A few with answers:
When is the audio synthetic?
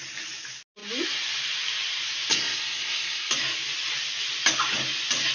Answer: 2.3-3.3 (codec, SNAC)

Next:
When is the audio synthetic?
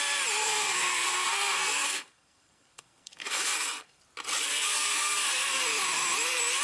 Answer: 0.4-4.0 (codec, SNAC); 4.5-5.6